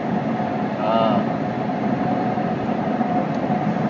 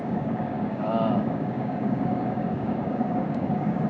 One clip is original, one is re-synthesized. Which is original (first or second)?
first